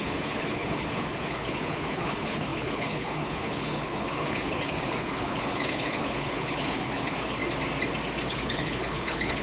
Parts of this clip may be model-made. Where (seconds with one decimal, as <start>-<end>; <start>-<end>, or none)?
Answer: 0.0-7.4; 8.3-9.4